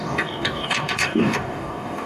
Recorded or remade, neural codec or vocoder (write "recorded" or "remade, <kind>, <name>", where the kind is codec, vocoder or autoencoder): remade, codec, DAC